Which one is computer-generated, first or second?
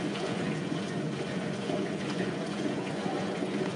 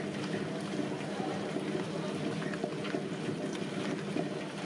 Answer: first